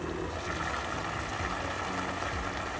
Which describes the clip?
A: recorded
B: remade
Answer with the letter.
A